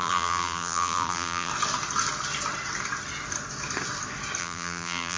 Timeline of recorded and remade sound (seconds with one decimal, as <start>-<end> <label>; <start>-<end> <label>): 0.0-1.5 remade; 1.5-4.4 recorded; 4.4-5.2 remade